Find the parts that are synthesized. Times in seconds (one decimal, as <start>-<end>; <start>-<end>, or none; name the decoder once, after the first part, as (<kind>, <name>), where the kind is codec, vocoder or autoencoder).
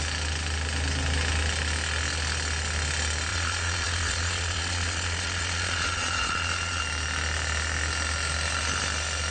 3.3-6.8 (vocoder, Vocos)